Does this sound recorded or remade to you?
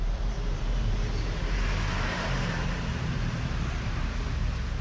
remade